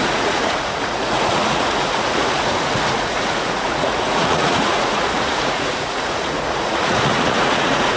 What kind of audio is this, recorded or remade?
remade